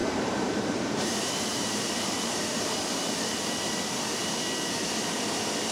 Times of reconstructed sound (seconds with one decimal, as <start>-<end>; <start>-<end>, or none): 0.0-1.1; 1.5-2.4